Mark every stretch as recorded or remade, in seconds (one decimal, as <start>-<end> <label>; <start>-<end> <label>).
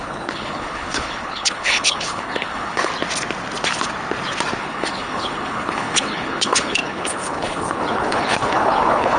0.0-2.9 remade; 2.9-4.6 recorded; 4.6-9.2 remade